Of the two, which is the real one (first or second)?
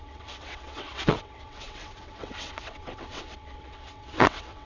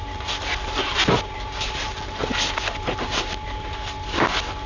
second